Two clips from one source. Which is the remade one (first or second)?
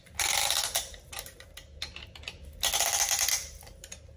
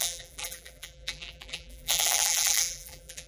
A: second